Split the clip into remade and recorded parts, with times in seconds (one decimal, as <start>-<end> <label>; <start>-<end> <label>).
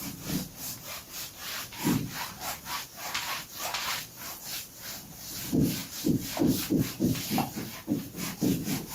0.0-8.9 remade